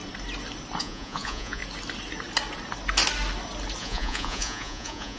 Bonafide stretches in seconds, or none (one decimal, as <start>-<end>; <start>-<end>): 0.0-0.8; 1.6-3.8